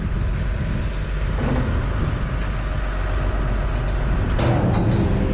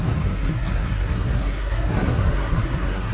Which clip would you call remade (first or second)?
second